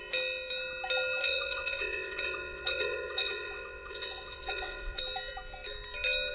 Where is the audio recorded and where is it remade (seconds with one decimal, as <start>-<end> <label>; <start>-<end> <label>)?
0.0-1.2 recorded; 1.2-5.0 remade; 5.0-6.3 recorded